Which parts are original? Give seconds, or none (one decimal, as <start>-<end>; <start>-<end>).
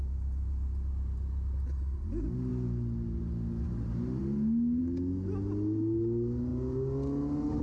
0.0-7.6